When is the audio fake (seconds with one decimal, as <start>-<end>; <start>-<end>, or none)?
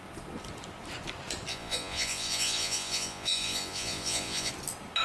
1.5-4.5